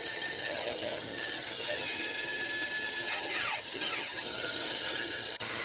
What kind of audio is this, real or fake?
fake